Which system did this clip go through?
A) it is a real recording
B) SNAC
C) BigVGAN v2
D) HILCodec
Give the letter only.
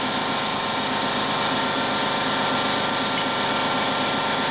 A